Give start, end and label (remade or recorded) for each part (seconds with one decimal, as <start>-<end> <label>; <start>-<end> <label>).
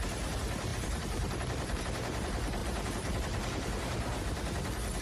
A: 0.0-0.7 recorded; 0.7-1.8 remade; 1.8-2.6 recorded; 2.6-4.2 remade; 4.2-5.0 recorded